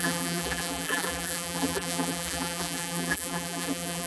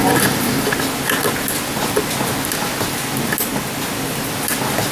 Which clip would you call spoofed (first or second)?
first